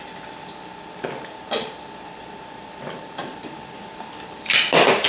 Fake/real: real